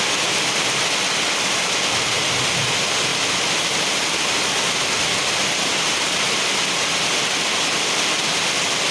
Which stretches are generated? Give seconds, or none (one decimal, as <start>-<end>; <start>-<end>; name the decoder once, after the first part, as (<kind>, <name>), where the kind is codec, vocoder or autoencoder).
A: none